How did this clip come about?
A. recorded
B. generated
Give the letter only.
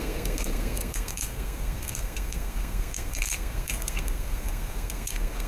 B